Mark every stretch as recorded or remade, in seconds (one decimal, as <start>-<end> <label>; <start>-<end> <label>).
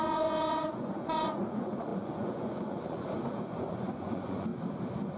0.0-4.5 remade; 4.5-5.2 recorded